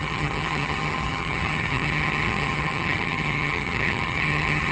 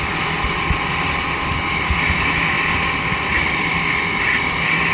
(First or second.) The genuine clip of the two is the second